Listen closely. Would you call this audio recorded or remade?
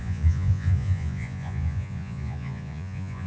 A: remade